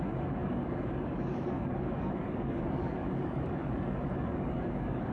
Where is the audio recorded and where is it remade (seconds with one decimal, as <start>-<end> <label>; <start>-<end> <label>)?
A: 0.0-5.1 remade